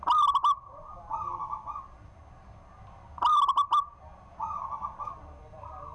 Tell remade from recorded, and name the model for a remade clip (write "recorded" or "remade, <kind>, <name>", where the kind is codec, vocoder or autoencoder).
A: recorded